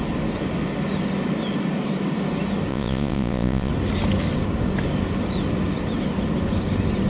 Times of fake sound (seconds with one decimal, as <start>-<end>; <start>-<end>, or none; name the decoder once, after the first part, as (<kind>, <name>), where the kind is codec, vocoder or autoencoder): 2.7-3.7 (vocoder, Vocos)